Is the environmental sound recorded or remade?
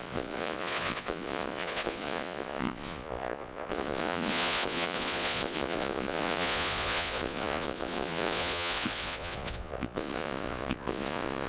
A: remade